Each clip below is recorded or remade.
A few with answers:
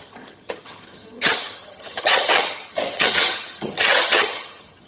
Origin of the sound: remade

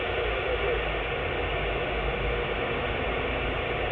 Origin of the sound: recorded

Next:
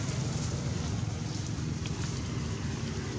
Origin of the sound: recorded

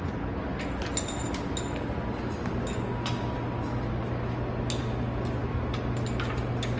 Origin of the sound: recorded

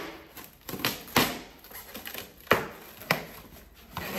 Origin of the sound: recorded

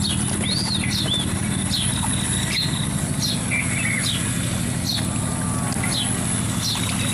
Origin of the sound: recorded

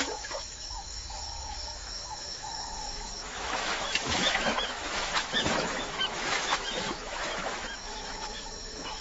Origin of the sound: remade